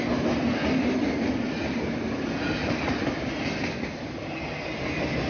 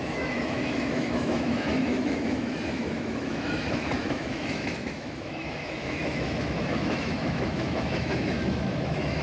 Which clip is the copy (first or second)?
second